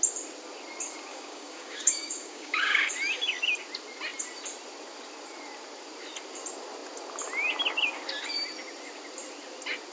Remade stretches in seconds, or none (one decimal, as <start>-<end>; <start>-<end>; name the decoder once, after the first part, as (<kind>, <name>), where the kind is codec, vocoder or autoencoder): 1.1-2.9 (codec, DAC)